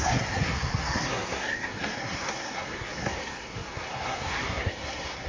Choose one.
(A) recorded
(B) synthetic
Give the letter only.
B